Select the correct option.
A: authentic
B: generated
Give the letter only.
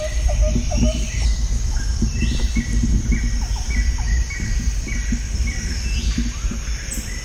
A